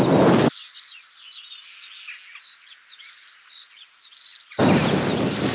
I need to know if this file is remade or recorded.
recorded